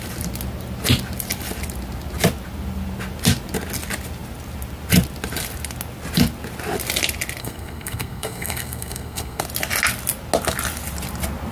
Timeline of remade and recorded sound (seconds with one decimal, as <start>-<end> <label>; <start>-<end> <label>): 0.0-7.4 recorded; 7.4-9.4 remade; 9.4-11.5 recorded